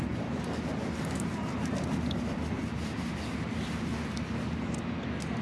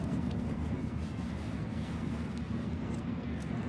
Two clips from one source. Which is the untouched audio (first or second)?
first